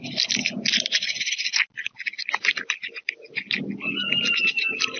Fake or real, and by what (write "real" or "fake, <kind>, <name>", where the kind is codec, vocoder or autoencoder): real